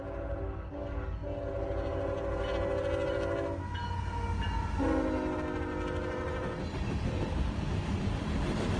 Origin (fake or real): real